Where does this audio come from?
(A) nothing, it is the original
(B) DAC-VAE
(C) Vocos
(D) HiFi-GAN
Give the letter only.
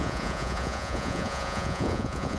C